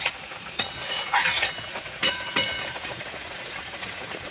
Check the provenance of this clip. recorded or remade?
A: remade